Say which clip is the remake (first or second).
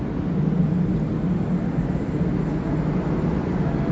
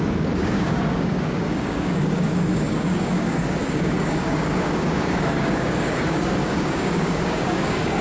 second